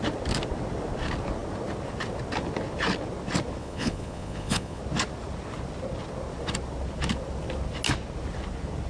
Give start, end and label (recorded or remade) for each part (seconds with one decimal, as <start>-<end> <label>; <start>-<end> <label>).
0.0-3.6 recorded; 3.6-4.8 remade; 4.8-8.9 recorded